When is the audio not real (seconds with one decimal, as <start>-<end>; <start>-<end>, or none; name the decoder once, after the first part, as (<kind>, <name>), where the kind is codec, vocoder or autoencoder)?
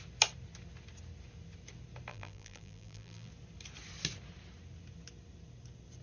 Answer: 2.1-3.3 (vocoder, BigVGAN v2)